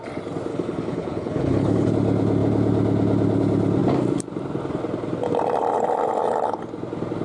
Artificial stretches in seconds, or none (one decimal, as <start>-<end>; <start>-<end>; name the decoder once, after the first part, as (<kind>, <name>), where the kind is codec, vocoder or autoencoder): 0.5-1.9 (codec, HILCodec)